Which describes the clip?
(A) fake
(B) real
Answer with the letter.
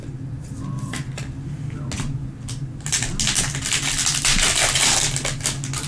B